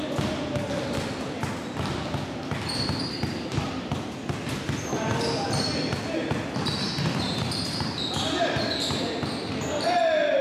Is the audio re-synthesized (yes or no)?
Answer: no